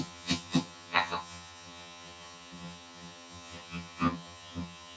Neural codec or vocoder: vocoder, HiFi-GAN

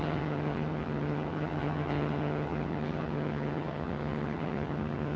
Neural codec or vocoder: vocoder, HiFi-GAN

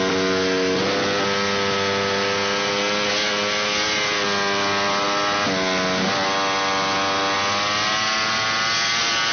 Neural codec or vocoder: none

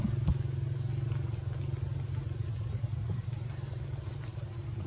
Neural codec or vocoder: none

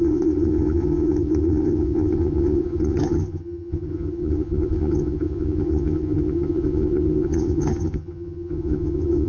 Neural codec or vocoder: vocoder, HiFi-GAN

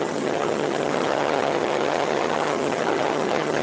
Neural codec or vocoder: vocoder, HiFi-GAN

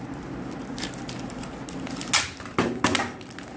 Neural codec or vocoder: none